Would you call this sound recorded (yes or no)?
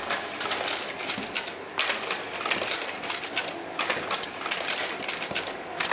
yes